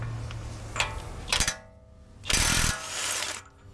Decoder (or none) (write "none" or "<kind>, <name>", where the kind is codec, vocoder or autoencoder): none